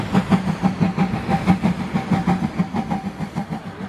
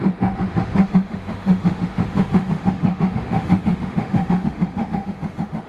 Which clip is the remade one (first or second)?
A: second